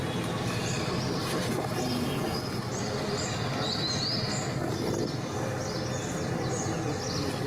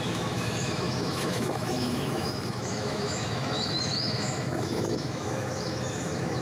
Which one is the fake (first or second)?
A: second